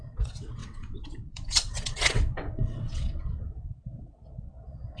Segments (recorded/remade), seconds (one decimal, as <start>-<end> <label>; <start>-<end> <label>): 0.0-5.0 remade